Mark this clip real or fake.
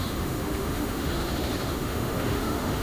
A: fake